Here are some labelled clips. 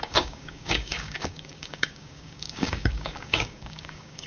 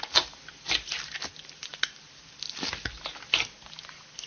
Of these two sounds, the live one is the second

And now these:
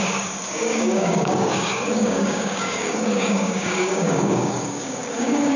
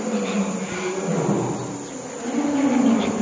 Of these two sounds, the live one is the second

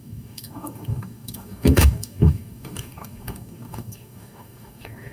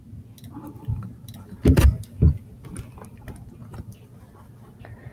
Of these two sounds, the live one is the second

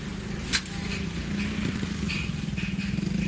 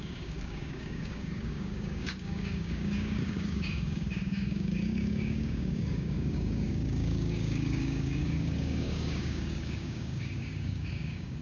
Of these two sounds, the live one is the first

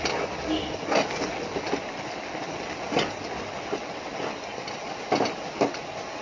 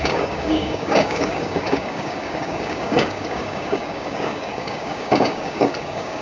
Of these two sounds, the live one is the first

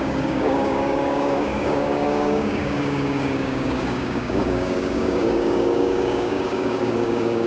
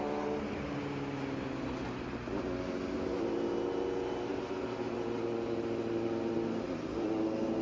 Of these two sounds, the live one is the second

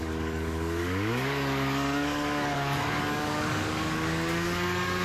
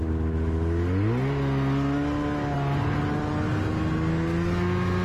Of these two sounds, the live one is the second